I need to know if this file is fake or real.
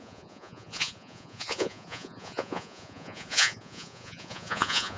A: fake